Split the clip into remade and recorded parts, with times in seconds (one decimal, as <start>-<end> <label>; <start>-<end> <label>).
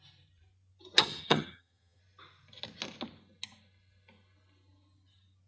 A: 0.0-1.0 recorded; 1.0-2.0 remade; 2.0-5.5 recorded